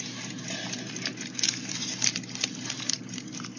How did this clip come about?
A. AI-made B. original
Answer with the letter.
B